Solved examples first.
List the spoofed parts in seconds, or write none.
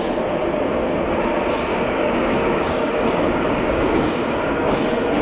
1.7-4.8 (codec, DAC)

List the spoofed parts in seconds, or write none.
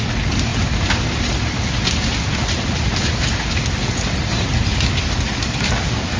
4.7-6.2 (codec, DAC)